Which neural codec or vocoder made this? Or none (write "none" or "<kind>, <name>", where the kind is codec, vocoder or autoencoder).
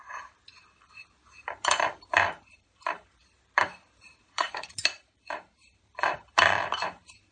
vocoder, BigVGAN v2